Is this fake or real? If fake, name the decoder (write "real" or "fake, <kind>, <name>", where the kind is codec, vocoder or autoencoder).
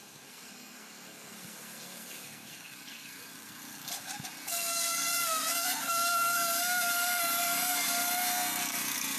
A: fake, codec, SNAC